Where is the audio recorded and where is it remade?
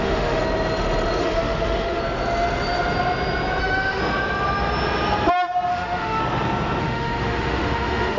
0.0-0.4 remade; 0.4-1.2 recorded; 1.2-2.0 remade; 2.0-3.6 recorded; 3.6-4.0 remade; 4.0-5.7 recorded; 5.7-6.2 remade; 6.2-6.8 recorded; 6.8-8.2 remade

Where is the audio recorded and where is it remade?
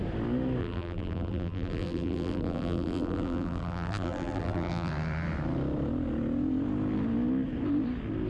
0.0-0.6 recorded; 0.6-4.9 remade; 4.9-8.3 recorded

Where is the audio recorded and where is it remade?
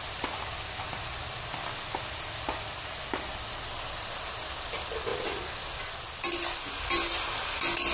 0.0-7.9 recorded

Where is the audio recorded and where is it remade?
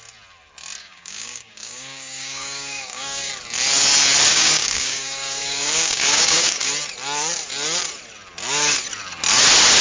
0.0-0.8 recorded; 0.8-3.3 remade; 3.3-4.3 recorded; 4.3-6.7 remade; 6.7-9.8 recorded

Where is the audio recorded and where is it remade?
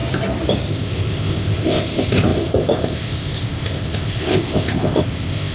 0.0-0.7 recorded; 0.7-5.5 remade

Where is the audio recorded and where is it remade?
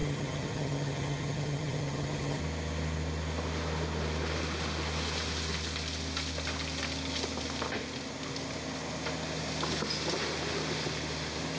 0.0-2.4 remade; 2.4-11.6 recorded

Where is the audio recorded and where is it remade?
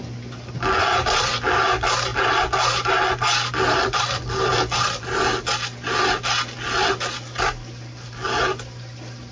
0.0-9.3 recorded